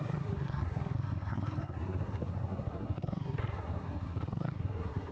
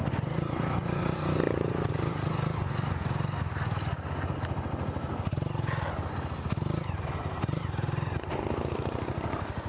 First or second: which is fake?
first